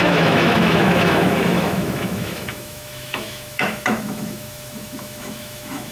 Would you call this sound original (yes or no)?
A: no